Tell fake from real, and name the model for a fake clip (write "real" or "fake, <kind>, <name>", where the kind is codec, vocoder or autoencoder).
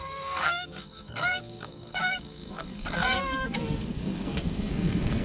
fake, codec, SNAC